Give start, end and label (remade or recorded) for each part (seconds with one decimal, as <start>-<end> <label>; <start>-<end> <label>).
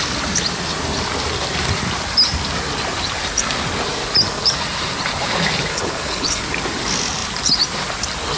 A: 0.0-5.7 recorded; 5.7-6.4 remade; 6.4-8.4 recorded